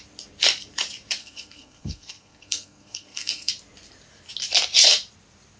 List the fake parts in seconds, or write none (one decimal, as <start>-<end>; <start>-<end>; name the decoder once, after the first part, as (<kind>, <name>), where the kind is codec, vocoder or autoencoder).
1.2-3.5 (codec, SNAC)

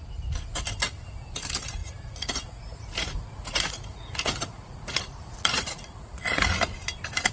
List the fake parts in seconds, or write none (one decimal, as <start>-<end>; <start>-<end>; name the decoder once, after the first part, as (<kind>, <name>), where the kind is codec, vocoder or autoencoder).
1.8-6.2 (vocoder, Vocos)

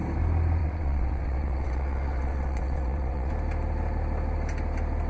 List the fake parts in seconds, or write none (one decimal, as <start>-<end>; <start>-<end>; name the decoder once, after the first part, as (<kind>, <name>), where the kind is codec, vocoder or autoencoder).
0.6-3.3 (vocoder, WaveNeXt)

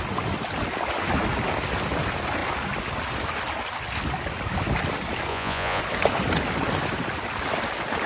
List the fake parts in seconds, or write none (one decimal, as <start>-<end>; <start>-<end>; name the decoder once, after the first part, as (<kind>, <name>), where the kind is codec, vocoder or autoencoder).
5.3-5.8 (vocoder, Vocos)

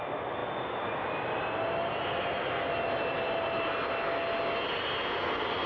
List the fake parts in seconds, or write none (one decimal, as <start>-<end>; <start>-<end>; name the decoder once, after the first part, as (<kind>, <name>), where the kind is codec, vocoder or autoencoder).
none